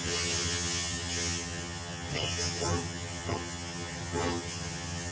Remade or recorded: remade